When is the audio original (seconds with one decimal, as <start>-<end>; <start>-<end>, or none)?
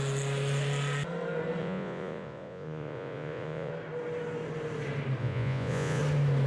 0.0-1.6; 3.7-5.2; 6.0-6.5